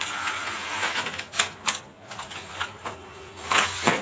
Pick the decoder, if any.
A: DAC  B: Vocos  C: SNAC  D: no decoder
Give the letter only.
B